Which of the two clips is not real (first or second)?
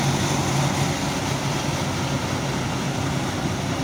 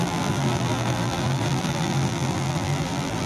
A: second